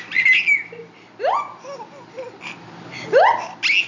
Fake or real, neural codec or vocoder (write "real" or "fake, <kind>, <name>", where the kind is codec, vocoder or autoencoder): real